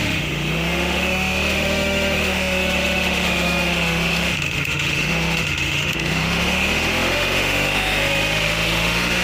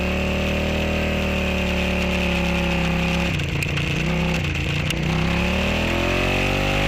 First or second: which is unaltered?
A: second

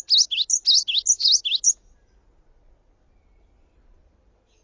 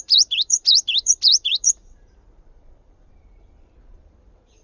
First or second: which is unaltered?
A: first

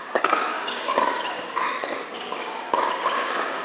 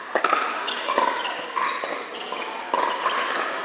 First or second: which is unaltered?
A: second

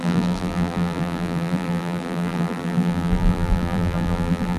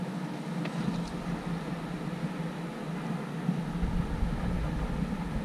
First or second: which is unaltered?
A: second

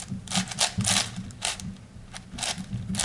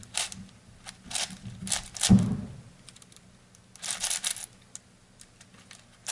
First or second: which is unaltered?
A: second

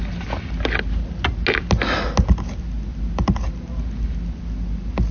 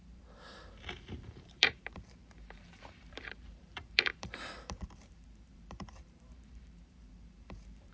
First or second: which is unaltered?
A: first